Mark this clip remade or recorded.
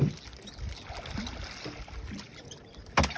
recorded